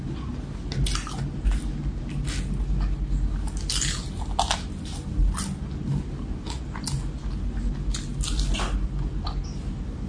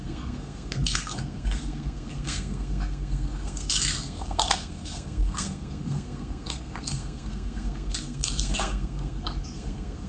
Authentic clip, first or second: first